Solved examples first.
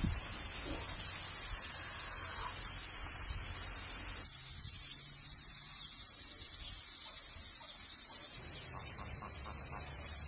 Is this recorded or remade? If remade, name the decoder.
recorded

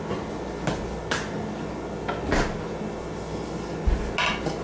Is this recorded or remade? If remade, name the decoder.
recorded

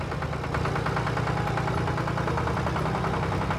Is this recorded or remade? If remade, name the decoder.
recorded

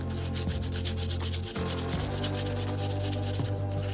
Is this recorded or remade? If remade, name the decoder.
recorded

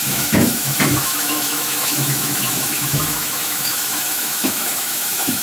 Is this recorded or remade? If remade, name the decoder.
remade, autoencoder, DAC-VAE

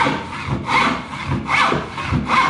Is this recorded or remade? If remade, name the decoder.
recorded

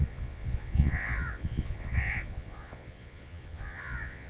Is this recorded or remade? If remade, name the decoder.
remade, vocoder, Vocos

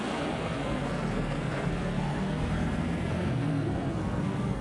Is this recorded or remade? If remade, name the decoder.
remade, codec, SNAC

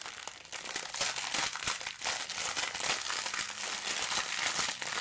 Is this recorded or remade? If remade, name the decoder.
recorded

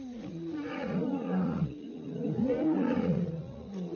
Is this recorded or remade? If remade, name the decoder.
remade, vocoder, Vocos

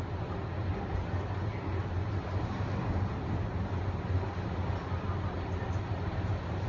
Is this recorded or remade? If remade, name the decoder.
recorded